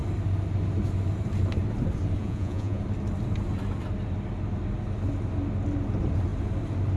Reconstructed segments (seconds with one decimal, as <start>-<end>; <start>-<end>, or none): 2.2-2.8